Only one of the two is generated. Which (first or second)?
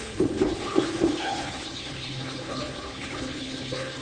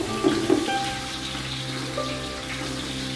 first